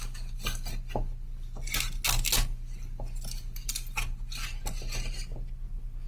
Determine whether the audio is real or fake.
real